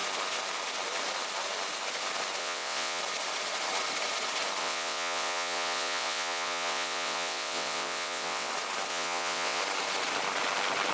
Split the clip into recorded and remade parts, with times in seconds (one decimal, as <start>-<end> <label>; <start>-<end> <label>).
0.0-2.4 recorded; 2.4-3.0 remade; 3.0-4.6 recorded; 4.6-8.5 remade; 8.5-8.9 recorded; 8.9-9.6 remade; 9.6-10.9 recorded